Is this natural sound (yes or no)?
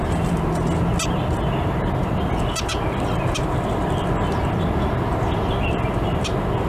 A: yes